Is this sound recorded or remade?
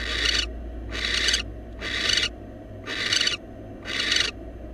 recorded